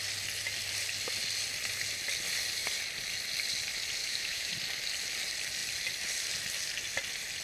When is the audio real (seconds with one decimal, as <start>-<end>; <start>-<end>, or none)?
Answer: 0.0-4.0; 4.5-7.4